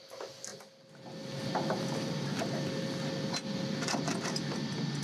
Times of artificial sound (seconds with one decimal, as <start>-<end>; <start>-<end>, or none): none